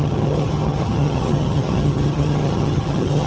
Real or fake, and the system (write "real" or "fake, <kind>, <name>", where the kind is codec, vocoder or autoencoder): fake, vocoder, HiFi-GAN